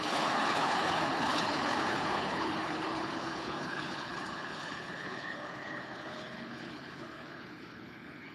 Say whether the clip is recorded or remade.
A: remade